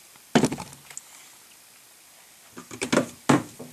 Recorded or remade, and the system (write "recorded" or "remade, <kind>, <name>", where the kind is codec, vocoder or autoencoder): recorded